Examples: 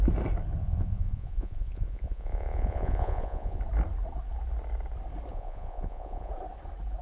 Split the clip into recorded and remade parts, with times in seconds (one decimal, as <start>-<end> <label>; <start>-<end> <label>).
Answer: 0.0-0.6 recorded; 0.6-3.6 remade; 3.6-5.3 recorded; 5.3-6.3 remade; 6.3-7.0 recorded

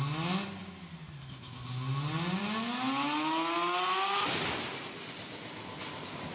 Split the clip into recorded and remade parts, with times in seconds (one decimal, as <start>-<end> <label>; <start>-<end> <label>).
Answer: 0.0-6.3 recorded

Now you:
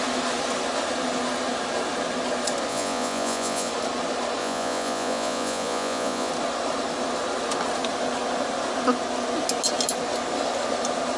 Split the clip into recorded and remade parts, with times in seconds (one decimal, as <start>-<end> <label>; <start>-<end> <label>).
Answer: 0.0-2.7 recorded; 2.7-3.7 remade; 3.7-4.4 recorded; 4.4-6.3 remade; 6.3-11.2 recorded

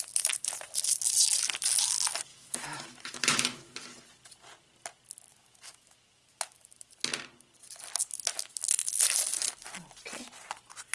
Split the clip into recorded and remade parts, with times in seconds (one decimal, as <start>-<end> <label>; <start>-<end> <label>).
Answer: 0.0-2.3 recorded; 2.3-3.7 remade; 3.7-5.3 recorded; 5.3-6.9 remade; 6.9-10.9 recorded